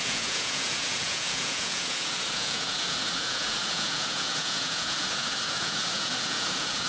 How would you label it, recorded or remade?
remade